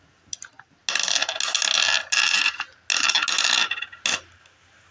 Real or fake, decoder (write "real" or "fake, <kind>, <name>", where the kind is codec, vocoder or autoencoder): real